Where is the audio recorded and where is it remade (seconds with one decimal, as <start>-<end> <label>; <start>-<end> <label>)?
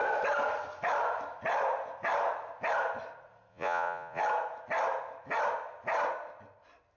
0.0-3.5 recorded; 3.5-4.2 remade; 4.2-7.0 recorded